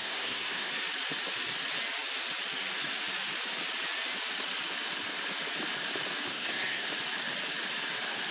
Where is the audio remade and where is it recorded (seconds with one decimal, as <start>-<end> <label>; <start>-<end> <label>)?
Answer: 0.0-0.7 remade; 0.7-6.3 recorded; 6.3-6.9 remade; 6.9-8.3 recorded